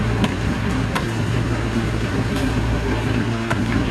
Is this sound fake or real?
fake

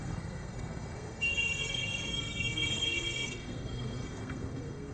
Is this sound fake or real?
fake